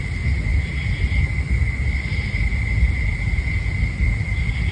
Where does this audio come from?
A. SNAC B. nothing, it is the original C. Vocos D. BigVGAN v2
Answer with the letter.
B